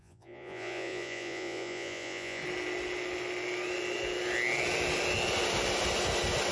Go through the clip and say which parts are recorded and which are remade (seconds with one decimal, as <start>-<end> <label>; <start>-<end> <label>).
0.0-2.4 remade; 2.4-6.5 recorded